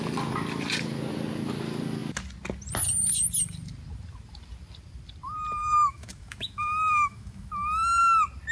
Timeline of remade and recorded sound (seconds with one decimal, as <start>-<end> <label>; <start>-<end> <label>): 0.0-5.6 recorded; 5.6-7.5 remade; 7.5-8.5 recorded